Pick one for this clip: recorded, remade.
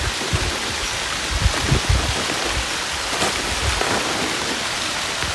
recorded